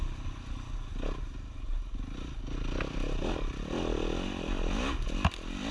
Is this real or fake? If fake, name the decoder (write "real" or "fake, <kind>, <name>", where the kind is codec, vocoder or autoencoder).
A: real